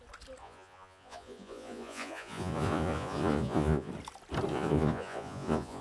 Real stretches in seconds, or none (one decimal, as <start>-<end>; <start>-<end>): 0.0-0.4; 3.9-4.5